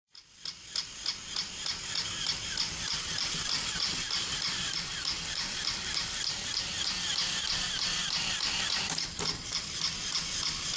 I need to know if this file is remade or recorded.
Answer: remade